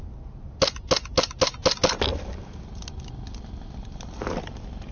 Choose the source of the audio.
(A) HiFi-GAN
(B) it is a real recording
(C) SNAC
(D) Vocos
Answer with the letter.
B